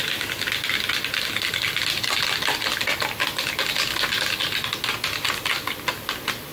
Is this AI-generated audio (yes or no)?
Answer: no